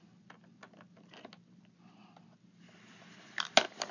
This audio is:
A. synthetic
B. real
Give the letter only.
B